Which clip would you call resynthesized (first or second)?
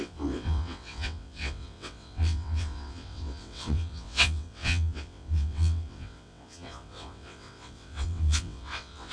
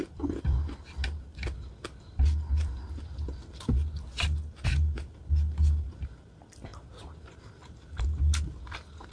first